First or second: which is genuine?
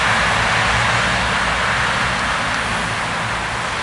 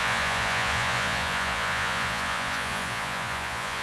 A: first